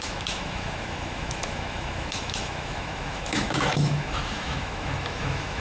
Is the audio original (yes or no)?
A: no